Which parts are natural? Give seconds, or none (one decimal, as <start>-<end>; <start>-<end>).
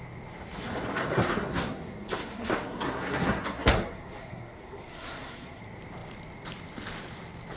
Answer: 0.0-1.0; 5.6-7.6